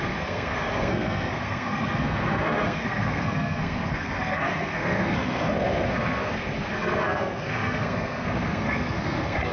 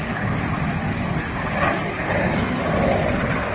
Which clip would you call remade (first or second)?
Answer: first